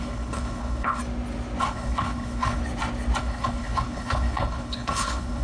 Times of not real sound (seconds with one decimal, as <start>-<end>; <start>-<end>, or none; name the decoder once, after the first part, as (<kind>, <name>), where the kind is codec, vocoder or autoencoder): 0.0-1.0 (codec, HILCodec); 1.6-2.6; 3.2-5.4